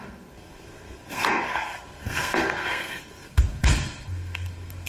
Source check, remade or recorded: remade